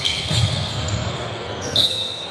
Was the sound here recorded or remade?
remade